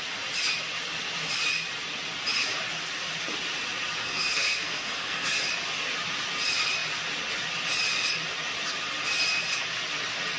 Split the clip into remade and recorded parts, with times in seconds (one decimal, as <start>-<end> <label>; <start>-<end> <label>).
0.0-4.0 recorded; 4.0-5.4 remade; 5.4-10.4 recorded